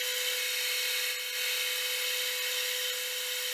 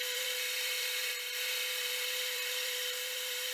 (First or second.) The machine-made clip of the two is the second